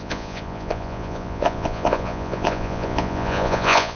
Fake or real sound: fake